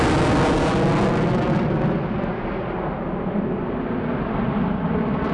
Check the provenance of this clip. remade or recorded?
recorded